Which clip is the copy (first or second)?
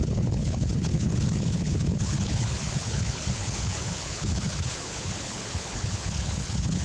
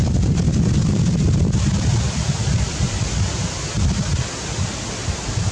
first